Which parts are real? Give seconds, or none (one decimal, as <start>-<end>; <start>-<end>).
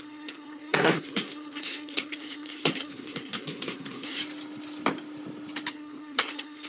4.2-5.7